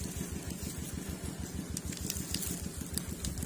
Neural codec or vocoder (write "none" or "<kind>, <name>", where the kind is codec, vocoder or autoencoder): none